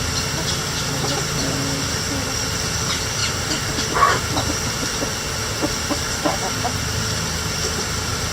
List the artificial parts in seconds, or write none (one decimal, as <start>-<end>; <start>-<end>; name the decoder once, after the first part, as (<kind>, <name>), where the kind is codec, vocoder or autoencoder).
none